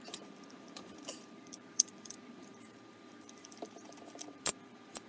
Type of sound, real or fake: fake